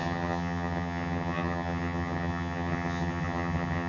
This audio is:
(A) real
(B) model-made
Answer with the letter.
B